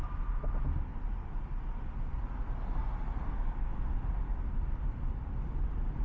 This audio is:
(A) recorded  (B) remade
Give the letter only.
A